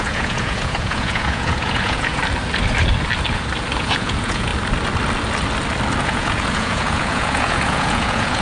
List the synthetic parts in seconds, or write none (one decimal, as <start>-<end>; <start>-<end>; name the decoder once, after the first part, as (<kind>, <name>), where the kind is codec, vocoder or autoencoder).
0.0-2.2 (vocoder, Vocos); 3.8-4.5; 6.0-8.4